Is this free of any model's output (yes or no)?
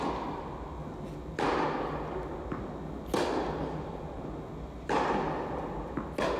yes